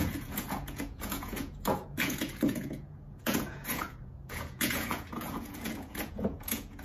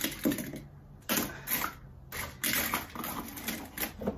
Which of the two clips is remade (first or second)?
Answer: first